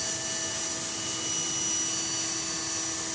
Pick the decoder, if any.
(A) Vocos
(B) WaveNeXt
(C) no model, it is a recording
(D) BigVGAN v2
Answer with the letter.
C